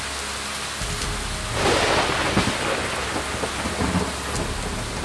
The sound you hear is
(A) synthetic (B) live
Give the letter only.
B